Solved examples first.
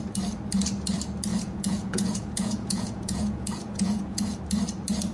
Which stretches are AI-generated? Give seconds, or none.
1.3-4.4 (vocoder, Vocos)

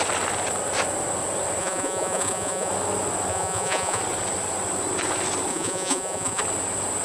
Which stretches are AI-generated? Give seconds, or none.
1.6-2.7 (vocoder, Vocos); 3.3-4.0; 5.5-6.4

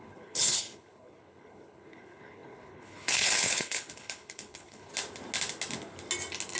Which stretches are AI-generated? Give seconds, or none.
0.0-4.9 (codec, HILCodec)

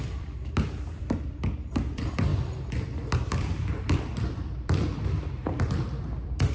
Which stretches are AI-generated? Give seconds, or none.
0.0-6.5 (vocoder, BigVGAN v2)